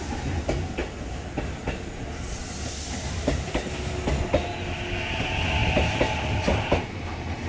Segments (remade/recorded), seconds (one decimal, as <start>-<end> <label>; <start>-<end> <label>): 0.0-7.5 recorded